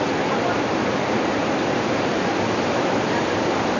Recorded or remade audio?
recorded